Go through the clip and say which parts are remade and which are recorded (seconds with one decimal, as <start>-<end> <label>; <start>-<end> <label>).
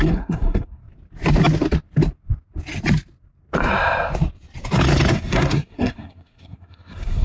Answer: 0.0-0.8 remade; 0.8-5.1 recorded; 5.1-7.2 remade